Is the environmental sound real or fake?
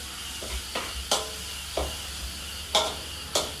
real